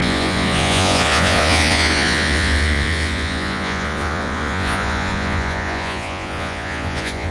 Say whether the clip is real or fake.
fake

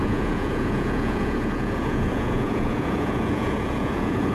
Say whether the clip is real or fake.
fake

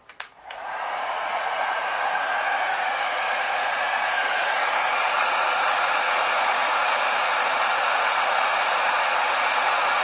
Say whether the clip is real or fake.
fake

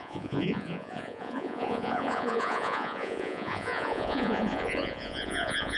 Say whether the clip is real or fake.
fake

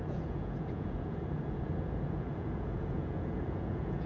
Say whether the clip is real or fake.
fake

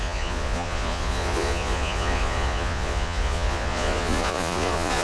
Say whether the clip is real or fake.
fake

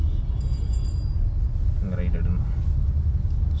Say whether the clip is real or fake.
real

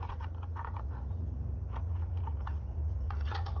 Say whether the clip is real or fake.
fake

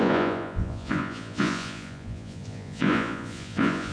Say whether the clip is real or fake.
fake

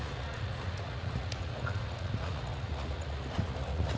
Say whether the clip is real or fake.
fake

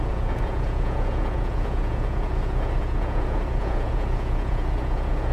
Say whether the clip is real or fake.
fake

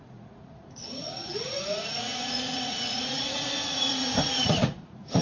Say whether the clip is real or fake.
fake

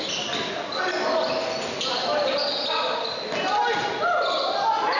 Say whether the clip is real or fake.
real